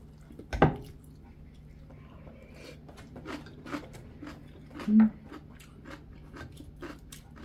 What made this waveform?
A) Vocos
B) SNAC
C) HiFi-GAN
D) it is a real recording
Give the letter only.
D